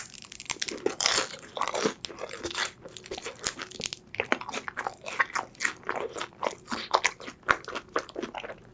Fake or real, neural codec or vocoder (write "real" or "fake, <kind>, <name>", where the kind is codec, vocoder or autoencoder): real